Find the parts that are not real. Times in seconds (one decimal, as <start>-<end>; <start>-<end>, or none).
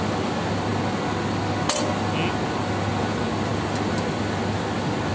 none